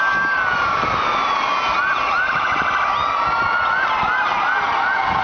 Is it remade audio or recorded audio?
recorded